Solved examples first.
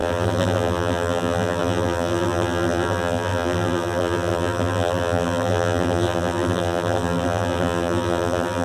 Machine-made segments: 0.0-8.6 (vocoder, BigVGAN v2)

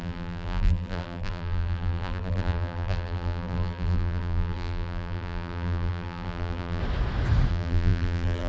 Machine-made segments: 0.0-6.8 (vocoder, BigVGAN v2); 7.5-8.5

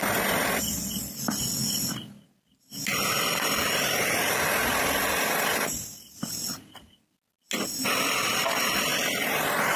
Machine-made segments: none

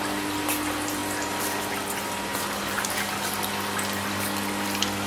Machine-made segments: none

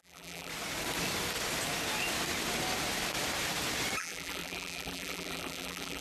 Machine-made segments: 0.0-0.5 (vocoder, BigVGAN v2); 4.0-6.0